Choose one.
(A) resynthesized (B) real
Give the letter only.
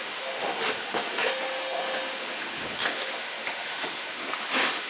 A